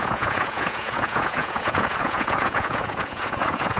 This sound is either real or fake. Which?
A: fake